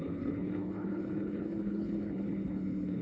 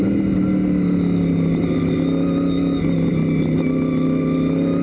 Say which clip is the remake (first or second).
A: first